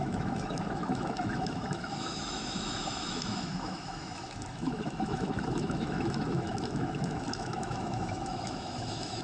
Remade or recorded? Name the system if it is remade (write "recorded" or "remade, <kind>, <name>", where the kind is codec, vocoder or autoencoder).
remade, autoencoder, DAC-VAE